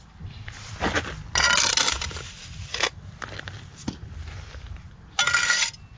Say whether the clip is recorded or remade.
recorded